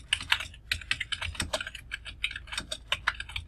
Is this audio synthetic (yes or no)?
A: no